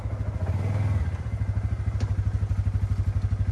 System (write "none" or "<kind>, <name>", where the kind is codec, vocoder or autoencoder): none